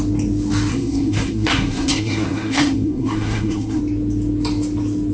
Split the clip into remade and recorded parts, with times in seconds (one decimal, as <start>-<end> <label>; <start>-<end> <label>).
0.0-0.7 recorded; 0.7-3.8 remade; 3.8-5.1 recorded